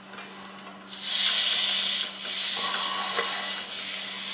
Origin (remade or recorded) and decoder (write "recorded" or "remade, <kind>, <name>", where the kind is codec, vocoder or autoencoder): recorded